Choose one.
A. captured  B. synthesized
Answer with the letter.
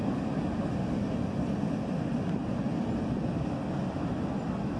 A